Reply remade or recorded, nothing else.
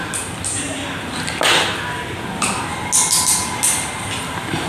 recorded